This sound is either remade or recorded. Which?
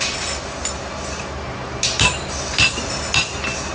recorded